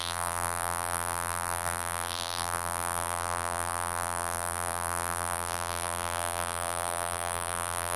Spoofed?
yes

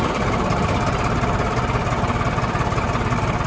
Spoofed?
yes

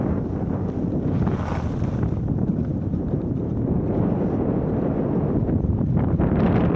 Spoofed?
no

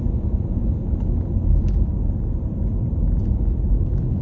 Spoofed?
yes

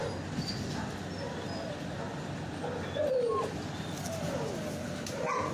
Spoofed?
no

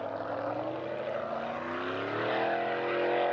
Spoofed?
no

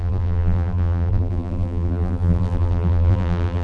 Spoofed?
yes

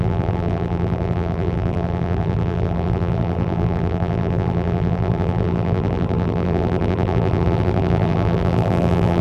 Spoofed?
yes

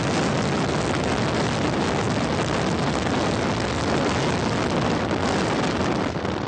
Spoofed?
no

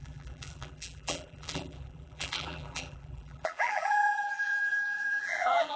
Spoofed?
yes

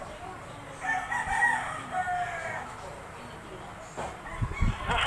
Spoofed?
no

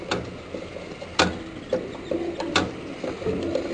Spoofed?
no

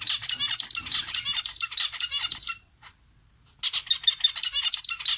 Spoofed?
no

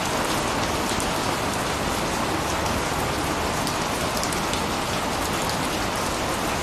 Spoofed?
no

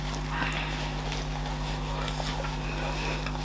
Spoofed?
no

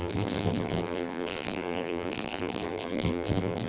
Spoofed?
yes